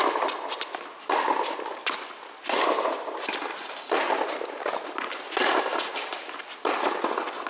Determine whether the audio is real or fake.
real